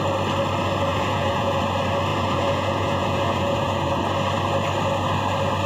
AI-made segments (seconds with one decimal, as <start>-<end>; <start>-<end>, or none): 0.9-1.6; 2.1-4.0